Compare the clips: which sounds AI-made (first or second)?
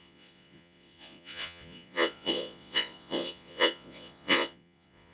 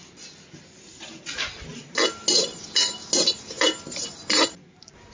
first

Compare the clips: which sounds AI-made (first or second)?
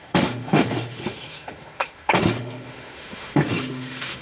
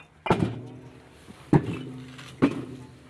first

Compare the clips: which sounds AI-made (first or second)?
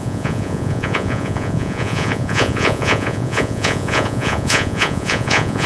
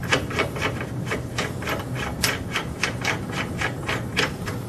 first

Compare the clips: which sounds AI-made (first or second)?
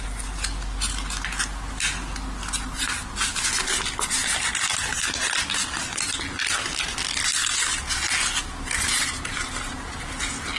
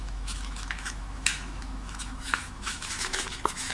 second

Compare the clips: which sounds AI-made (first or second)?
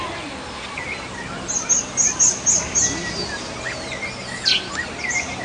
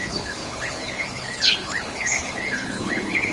second